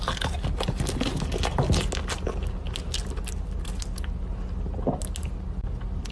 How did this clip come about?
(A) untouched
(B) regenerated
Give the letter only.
A